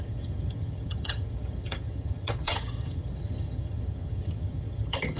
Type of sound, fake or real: fake